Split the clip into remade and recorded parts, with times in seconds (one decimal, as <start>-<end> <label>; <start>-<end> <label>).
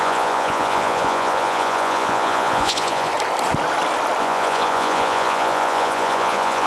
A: 0.0-3.1 remade; 3.1-4.2 recorded; 4.2-6.7 remade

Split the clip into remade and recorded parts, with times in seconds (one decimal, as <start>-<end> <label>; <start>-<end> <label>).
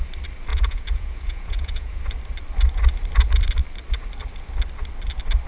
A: 0.0-0.5 recorded; 0.5-2.0 remade; 2.0-5.5 recorded